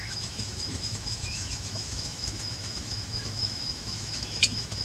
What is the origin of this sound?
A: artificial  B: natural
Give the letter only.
A